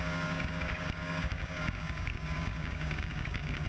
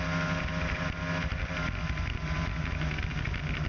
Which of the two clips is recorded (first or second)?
second